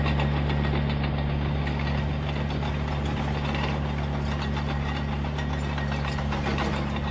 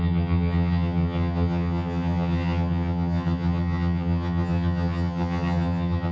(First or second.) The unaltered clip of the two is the first